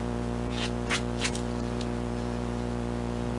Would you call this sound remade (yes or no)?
yes